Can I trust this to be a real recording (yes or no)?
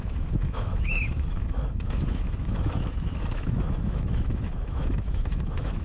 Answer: no